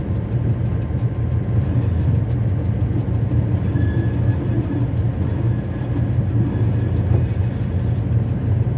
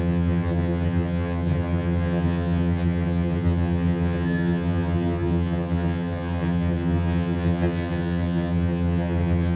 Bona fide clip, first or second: first